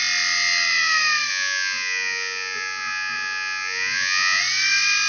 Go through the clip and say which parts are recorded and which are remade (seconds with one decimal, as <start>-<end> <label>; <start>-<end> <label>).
0.0-1.3 recorded; 1.3-4.4 remade; 4.4-5.1 recorded